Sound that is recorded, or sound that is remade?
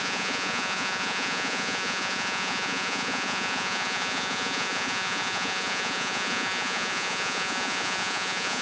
remade